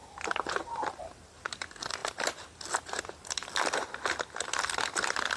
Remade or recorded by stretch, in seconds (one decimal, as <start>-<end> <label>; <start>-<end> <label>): 0.0-5.4 recorded